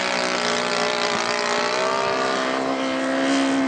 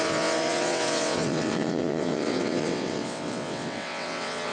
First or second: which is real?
first